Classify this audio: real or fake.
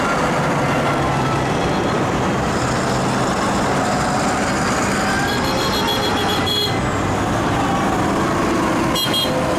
real